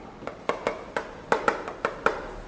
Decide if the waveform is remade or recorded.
remade